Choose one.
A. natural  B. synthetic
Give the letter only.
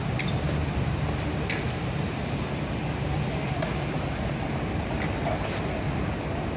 A